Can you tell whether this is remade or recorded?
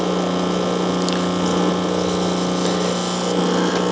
recorded